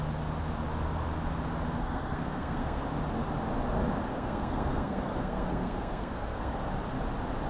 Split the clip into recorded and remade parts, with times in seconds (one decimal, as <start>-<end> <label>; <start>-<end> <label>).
0.0-1.8 recorded; 1.8-2.8 remade; 2.8-4.1 recorded; 4.1-6.5 remade; 6.5-7.5 recorded